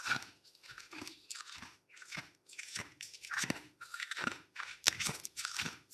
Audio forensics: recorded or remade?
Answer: remade